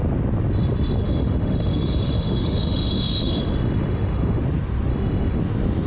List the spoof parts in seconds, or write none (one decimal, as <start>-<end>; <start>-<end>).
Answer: 1.0-4.4; 4.9-5.4